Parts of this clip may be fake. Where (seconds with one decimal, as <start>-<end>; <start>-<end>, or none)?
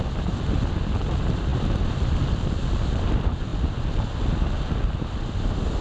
none